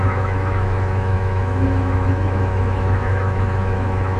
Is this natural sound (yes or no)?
no